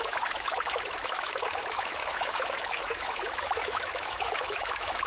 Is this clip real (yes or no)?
no